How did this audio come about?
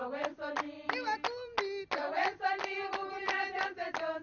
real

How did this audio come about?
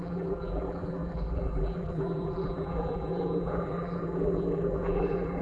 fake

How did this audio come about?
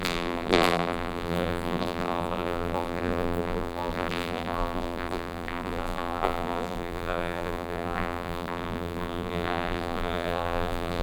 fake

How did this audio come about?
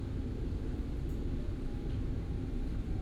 real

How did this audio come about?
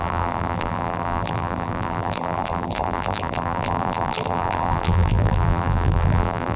fake